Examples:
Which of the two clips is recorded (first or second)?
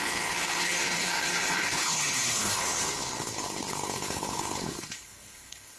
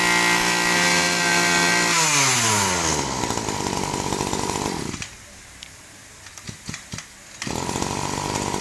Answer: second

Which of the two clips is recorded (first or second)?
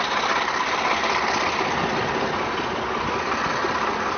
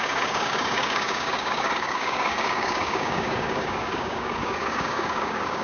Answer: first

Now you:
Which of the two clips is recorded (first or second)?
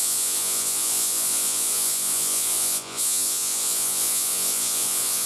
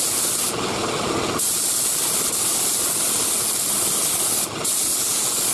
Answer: second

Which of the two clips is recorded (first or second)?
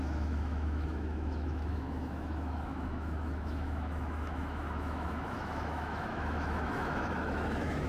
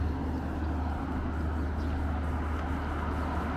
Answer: second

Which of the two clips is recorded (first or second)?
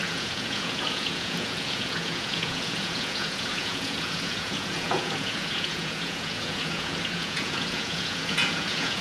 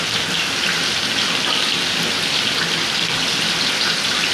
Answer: second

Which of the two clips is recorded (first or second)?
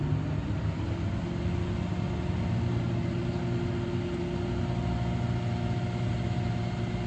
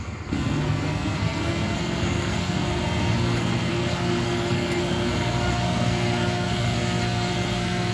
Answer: first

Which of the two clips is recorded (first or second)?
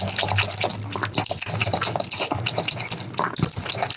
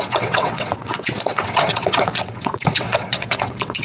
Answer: first